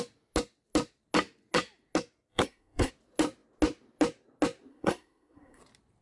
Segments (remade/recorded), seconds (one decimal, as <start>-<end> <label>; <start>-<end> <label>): 0.0-2.3 recorded; 2.3-2.9 remade; 2.9-4.7 recorded; 4.7-5.6 remade; 5.6-6.0 recorded